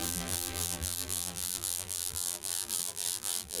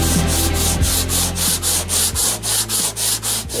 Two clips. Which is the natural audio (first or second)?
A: second